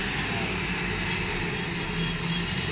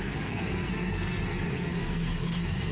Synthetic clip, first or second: second